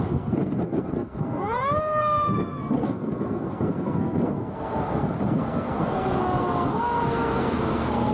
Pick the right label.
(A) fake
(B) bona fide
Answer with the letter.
A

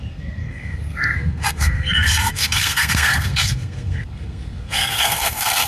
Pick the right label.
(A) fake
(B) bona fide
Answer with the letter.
A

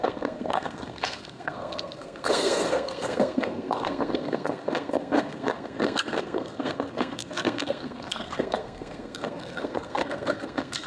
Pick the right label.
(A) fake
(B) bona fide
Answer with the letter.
A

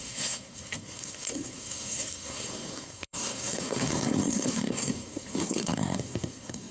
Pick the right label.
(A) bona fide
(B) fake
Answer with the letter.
B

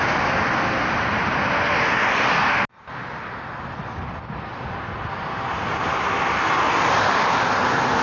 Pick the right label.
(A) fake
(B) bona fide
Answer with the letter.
B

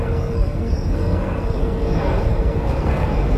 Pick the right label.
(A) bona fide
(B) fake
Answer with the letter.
B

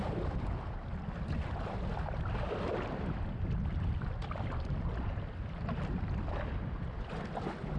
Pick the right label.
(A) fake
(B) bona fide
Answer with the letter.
B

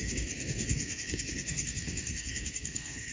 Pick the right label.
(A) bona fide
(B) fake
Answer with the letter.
B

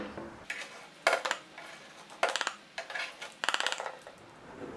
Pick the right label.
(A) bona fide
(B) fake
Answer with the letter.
A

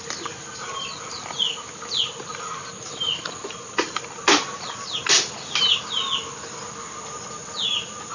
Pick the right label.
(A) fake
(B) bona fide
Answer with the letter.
B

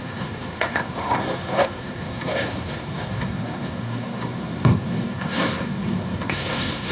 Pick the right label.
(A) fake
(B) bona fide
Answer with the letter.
A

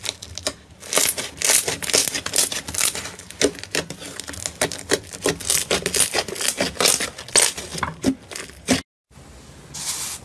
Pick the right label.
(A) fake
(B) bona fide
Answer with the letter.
B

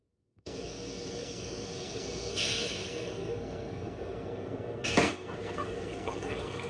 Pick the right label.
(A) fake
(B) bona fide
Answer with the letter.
A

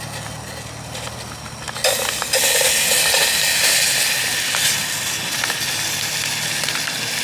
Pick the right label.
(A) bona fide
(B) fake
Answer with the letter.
A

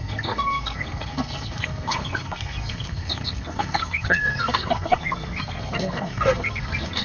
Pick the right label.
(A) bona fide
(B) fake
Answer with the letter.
B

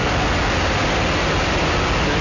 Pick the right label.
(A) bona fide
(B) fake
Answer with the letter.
A